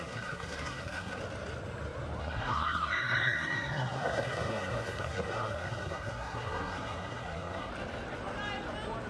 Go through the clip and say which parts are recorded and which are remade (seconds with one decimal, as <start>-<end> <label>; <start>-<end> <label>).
0.0-1.2 remade; 1.2-2.2 recorded; 2.2-7.7 remade; 7.7-9.1 recorded